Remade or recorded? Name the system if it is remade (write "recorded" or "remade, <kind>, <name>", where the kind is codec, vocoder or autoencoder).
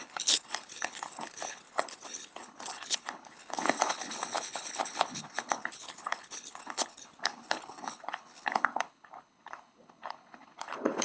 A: remade, codec, HILCodec